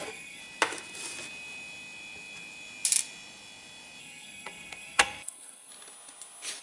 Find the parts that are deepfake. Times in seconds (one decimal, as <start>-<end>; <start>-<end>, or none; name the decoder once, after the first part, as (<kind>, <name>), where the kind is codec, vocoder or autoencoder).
0.0-0.4 (codec, SNAC); 4.0-5.7